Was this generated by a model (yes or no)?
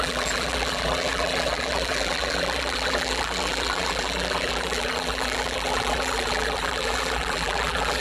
yes